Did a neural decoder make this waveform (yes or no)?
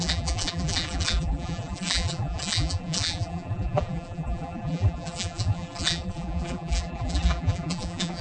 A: yes